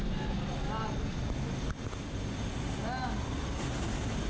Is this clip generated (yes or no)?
no